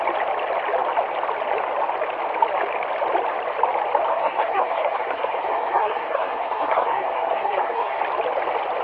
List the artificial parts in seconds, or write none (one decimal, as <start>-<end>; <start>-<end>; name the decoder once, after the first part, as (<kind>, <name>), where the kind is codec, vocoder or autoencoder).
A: 4.1-8.0 (codec, SNAC)